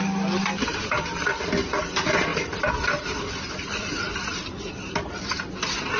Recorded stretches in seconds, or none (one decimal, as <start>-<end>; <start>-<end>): 0.0-0.7; 1.7-2.3; 4.9-6.0